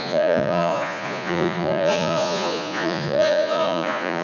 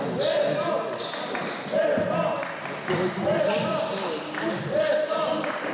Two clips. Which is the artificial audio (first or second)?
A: first